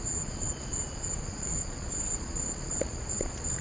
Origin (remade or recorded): remade